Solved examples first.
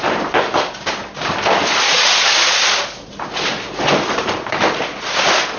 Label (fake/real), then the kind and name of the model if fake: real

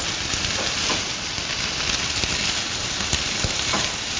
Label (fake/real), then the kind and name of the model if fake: real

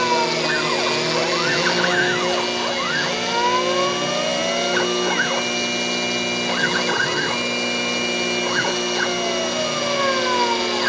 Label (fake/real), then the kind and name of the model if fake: real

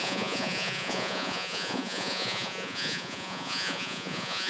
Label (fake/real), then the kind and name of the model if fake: fake, vocoder, Vocos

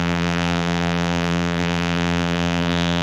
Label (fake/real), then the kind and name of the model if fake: fake, vocoder, BigVGAN v2